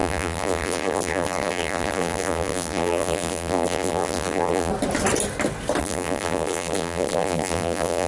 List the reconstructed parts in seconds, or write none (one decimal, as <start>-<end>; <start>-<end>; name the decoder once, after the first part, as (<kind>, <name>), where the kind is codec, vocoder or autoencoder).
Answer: 0.0-4.7 (vocoder, BigVGAN v2); 5.8-8.1